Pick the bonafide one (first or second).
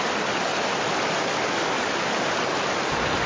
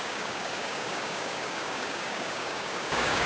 first